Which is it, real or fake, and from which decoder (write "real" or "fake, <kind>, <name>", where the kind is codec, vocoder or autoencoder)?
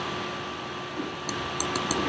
real